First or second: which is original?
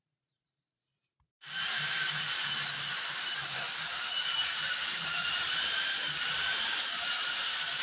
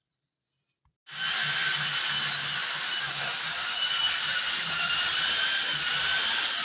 second